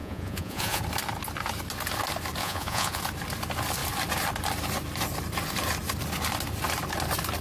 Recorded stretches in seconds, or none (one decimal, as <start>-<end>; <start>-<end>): 0.8-2.4; 3.0-7.4